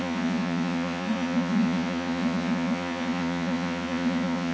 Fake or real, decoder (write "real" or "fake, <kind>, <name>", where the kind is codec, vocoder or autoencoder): fake, vocoder, Vocos